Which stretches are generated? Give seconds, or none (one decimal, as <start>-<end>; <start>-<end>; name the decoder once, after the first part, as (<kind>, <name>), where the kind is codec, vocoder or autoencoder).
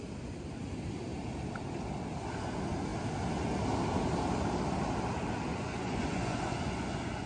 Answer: 5.5-7.3 (vocoder, Vocos)